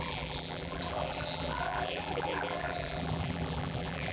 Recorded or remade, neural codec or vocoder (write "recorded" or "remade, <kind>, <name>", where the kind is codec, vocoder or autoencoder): remade, vocoder, BigVGAN v2